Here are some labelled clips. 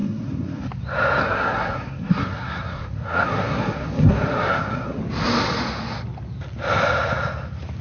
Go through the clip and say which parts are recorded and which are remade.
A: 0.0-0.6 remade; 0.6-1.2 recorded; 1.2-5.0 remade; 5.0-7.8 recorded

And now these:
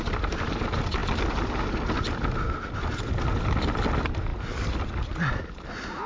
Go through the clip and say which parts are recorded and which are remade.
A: 0.0-6.1 recorded